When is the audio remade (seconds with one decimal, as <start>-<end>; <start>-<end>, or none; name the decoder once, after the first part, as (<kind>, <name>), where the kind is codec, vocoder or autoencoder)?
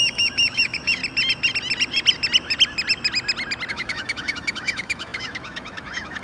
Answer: 0.0-1.0 (autoencoder, DAC-VAE); 3.7-6.2